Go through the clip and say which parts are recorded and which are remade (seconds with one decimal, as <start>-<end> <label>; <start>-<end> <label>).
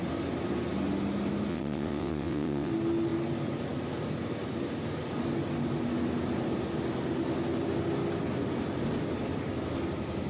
0.0-1.5 recorded; 1.5-2.7 remade; 2.7-10.3 recorded